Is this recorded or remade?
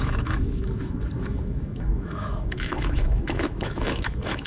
remade